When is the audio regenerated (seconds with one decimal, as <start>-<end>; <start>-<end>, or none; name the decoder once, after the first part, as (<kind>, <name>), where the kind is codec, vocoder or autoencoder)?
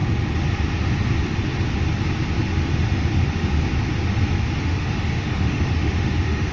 4.6-6.5 (autoencoder, DAC-VAE)